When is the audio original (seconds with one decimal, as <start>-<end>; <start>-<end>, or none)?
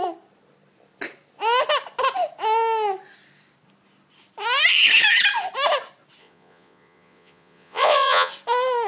0.0-6.2; 8.3-8.9